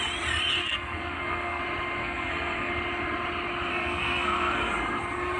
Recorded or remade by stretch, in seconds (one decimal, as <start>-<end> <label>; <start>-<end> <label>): 0.0-0.6 recorded; 0.6-1.6 remade; 1.6-2.0 recorded; 2.0-2.7 remade; 2.7-3.7 recorded; 3.7-4.6 remade; 4.6-5.4 recorded